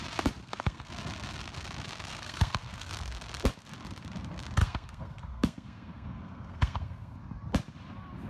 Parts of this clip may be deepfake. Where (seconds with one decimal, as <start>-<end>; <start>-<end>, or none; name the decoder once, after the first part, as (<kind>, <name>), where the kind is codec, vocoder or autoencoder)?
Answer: 0.4-0.9 (codec, SNAC); 2.1-2.9; 4.6-7.3